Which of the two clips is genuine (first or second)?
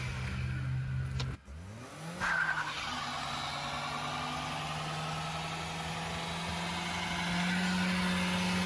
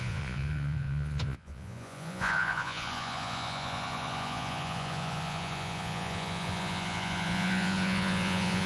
first